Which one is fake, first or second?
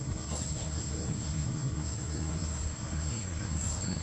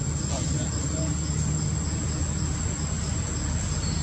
first